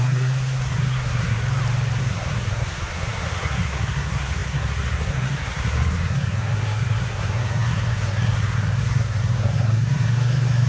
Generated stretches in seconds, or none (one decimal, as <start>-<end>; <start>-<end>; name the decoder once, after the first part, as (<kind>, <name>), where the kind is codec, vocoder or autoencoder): 0.0-1.4 (codec, SNAC); 2.0-10.7